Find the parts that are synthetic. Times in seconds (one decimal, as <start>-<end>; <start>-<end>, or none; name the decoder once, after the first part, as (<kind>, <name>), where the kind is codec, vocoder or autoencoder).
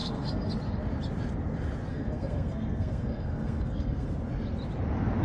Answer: 0.0-0.5 (codec, SNAC); 1.9-4.1